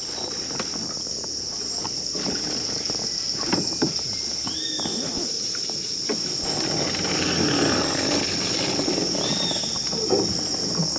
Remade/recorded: recorded